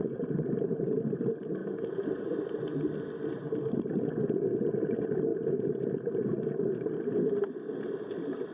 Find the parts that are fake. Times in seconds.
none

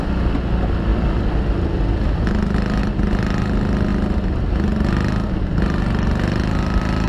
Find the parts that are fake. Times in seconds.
none

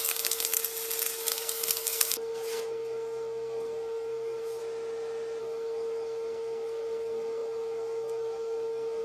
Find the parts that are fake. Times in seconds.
0.0-0.6 (codec, SNAC); 1.2-4.6; 5.4-9.0

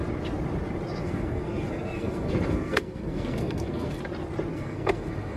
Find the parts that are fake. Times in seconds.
1.0-4.0 (codec, SNAC); 4.5-5.4

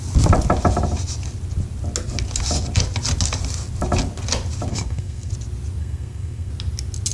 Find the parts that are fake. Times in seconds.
4.7-5.3 (codec, SNAC); 5.8-6.5

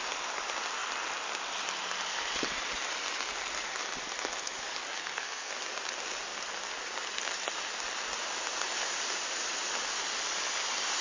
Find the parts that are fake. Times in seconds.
5.0-5.5 (codec, SNAC)